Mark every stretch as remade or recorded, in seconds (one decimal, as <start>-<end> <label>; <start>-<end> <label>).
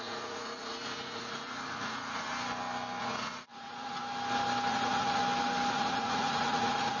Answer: 0.0-2.3 remade; 2.3-3.0 recorded; 3.0-4.0 remade; 4.0-4.7 recorded; 4.7-5.2 remade; 5.2-5.7 recorded; 5.7-7.0 remade